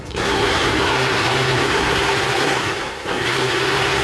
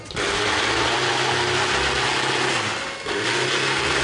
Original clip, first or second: second